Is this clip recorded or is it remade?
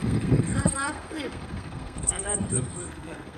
remade